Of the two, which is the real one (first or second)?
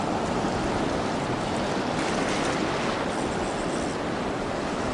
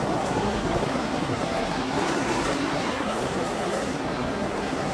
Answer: first